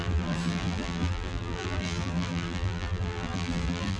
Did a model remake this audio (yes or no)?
yes